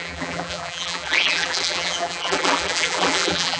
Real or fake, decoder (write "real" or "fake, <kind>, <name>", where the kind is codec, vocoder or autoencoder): fake, vocoder, BigVGAN v2